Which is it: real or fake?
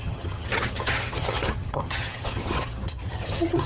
fake